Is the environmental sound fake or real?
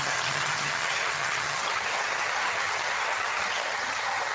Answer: fake